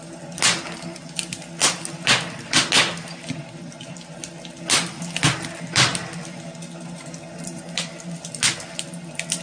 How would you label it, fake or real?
real